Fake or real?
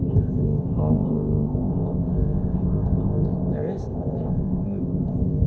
fake